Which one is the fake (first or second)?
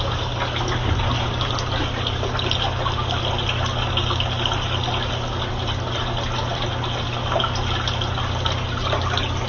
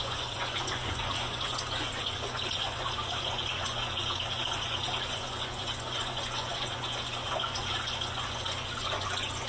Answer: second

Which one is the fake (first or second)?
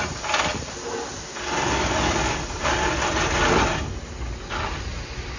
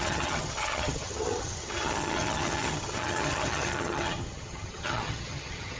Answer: second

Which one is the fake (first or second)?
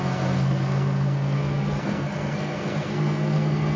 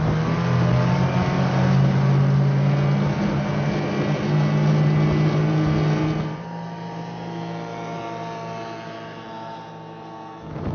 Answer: first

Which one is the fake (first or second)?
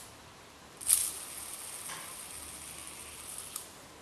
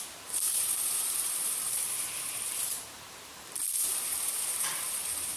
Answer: second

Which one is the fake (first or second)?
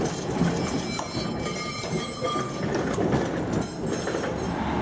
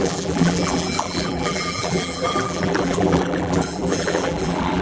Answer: second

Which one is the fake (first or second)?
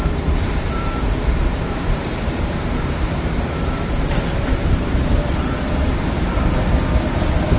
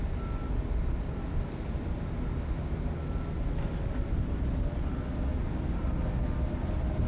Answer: first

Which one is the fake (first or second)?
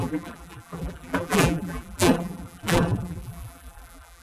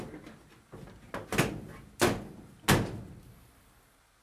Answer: first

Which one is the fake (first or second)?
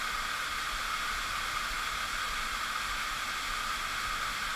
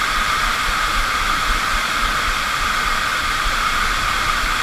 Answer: second